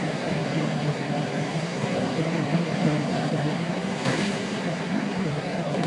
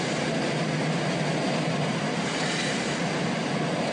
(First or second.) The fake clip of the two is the first